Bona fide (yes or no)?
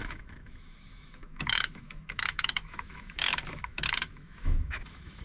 no